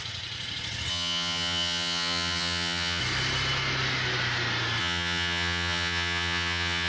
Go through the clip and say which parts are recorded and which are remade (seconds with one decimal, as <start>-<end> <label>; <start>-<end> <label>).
0.0-0.9 recorded; 0.9-3.0 remade; 3.0-4.8 recorded; 4.8-6.9 remade